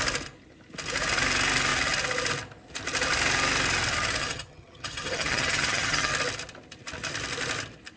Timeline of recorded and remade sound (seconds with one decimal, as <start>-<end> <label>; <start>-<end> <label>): 0.0-4.2 recorded; 4.2-6.1 remade; 6.1-8.0 recorded

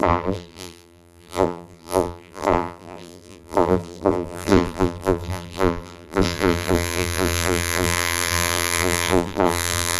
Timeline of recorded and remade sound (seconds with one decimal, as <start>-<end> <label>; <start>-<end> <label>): 0.0-10.0 remade

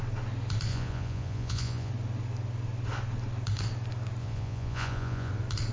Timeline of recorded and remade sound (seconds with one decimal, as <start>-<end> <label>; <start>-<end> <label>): 0.0-0.7 recorded; 0.7-1.9 remade; 1.9-4.2 recorded; 4.2-5.3 remade; 5.3-5.7 recorded

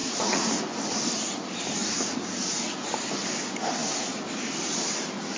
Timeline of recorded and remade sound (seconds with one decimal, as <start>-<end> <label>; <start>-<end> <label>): 0.0-0.6 remade; 0.6-5.4 recorded

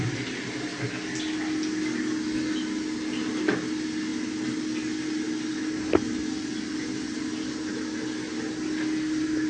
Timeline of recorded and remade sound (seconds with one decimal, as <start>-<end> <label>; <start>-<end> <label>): 0.0-9.5 recorded

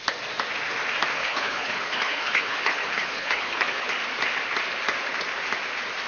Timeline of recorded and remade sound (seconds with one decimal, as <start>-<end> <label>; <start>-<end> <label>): 0.0-1.2 recorded; 1.2-3.9 remade; 3.9-6.1 recorded

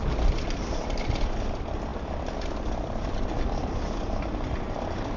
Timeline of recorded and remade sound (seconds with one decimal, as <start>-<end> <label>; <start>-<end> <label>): 0.0-5.2 recorded

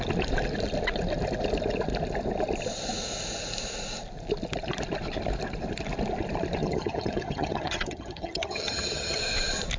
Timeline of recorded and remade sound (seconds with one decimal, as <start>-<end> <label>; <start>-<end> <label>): 0.0-6.6 recorded; 6.6-9.2 remade; 9.2-9.8 recorded